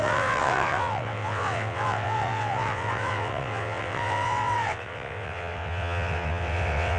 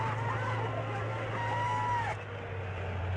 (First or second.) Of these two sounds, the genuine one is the second